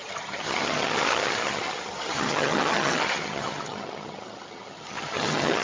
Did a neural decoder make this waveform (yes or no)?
yes